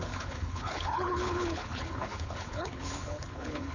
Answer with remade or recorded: remade